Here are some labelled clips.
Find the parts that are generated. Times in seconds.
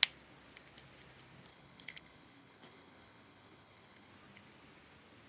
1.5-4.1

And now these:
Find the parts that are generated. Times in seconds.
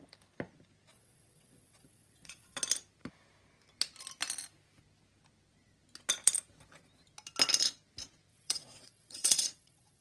0.9-2.6; 8.3-10.0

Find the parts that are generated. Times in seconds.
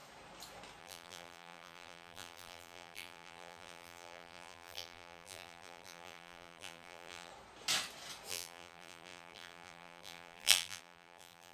0.8-7.3; 8.3-11.5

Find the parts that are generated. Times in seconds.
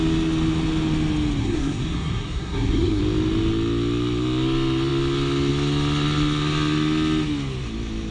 1.4-3.0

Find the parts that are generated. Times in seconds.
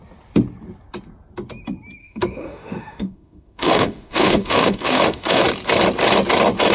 2.0-5.4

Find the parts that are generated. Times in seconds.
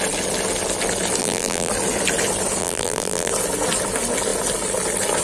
1.2-1.7; 2.6-3.3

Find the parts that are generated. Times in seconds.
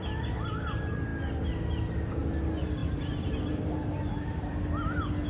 none